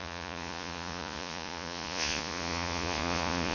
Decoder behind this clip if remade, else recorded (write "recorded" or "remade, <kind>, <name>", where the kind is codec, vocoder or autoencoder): remade, vocoder, Vocos